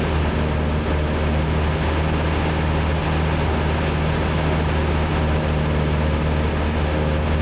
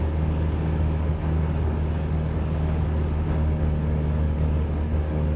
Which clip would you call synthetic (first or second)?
second